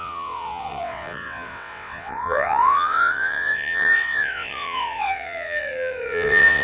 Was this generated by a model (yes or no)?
yes